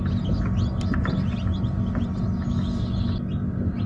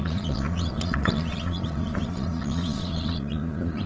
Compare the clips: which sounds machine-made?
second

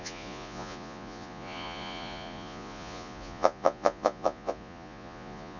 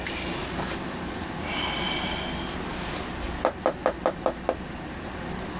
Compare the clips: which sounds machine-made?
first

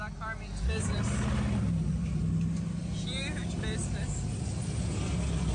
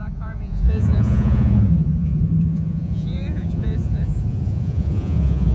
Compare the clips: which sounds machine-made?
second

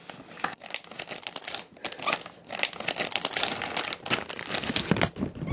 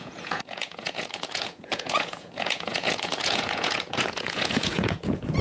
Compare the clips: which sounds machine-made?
second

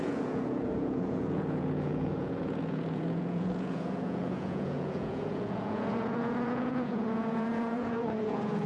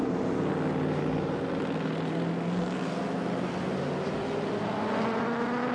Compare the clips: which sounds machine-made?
first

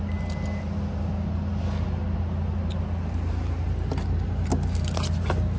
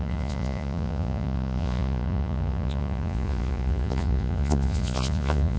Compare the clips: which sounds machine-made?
second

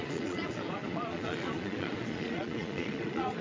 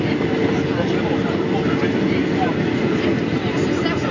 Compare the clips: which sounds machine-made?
first